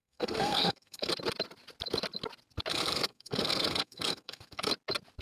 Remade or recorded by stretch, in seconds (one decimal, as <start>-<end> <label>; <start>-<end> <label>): 0.0-1.1 remade; 1.1-2.7 recorded; 2.7-4.7 remade; 4.7-5.2 recorded